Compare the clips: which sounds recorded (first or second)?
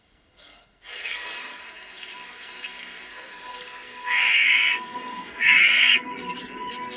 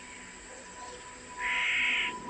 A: second